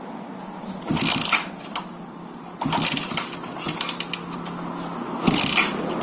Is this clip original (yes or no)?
yes